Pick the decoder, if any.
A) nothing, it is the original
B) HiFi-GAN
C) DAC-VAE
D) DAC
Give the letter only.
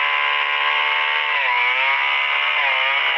A